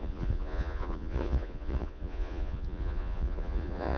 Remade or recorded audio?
remade